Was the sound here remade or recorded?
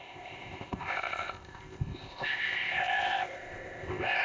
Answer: remade